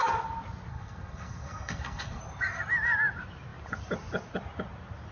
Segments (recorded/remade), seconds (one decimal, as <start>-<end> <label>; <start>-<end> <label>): 0.0-0.7 recorded; 0.7-2.2 remade; 2.2-5.1 recorded